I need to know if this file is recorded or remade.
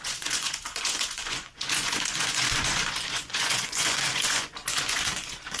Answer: remade